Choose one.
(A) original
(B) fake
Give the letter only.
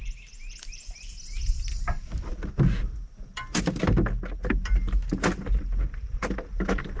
A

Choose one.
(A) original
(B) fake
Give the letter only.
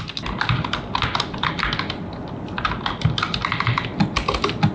A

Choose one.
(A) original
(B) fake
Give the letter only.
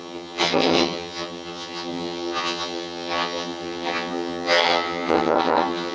B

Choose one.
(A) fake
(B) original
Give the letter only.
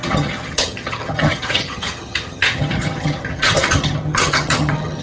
A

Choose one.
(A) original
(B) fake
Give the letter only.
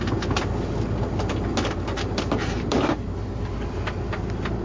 A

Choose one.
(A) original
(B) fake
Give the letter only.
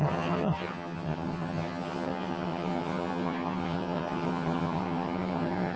B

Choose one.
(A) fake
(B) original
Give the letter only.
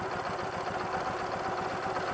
B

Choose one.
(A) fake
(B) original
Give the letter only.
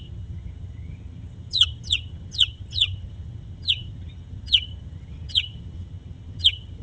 A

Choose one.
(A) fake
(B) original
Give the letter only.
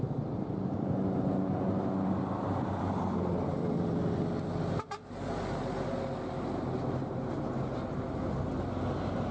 B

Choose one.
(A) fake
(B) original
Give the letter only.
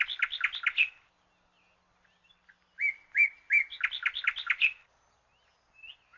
B